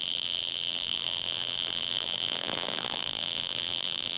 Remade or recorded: remade